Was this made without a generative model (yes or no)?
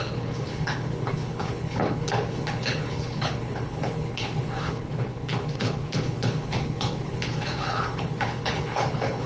no